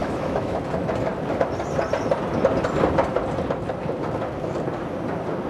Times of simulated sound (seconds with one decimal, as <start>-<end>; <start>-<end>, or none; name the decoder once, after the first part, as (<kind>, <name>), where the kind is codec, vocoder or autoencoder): 0.0-0.6 (autoencoder, DAC-VAE)